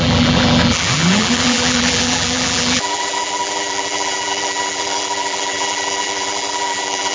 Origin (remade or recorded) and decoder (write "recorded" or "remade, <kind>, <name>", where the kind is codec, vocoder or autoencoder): remade, vocoder, BigVGAN v2